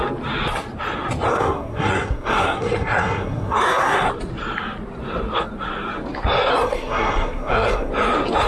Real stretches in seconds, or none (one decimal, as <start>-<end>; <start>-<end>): 0.0-1.3; 4.1-6.5; 7.9-8.5